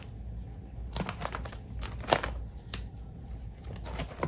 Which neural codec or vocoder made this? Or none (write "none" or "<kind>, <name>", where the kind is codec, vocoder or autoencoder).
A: none